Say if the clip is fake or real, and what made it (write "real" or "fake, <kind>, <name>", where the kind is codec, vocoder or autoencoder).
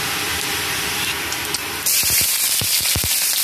fake, vocoder, BigVGAN v2